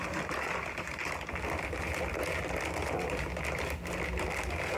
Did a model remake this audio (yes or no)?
no